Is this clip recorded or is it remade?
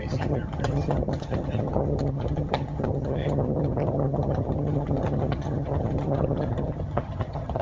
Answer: remade